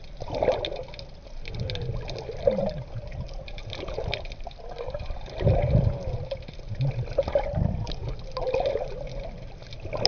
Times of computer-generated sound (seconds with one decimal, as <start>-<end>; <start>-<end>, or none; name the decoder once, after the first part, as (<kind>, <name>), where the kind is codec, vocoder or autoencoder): none